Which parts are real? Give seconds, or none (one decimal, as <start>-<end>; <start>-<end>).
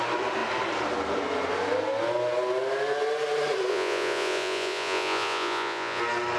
0.0-3.7; 6.0-6.4